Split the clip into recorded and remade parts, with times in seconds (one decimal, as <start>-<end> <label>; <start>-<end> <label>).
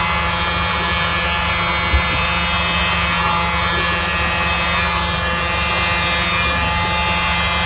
0.0-7.7 recorded